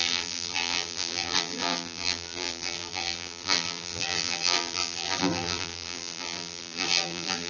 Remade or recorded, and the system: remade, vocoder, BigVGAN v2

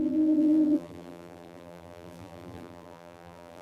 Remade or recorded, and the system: remade, vocoder, BigVGAN v2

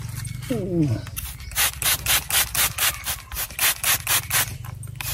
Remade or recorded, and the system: recorded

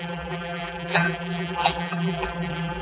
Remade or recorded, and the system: remade, vocoder, BigVGAN v2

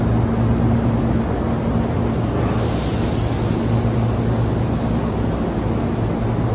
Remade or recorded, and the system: recorded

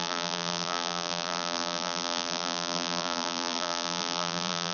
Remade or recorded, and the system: remade, vocoder, BigVGAN v2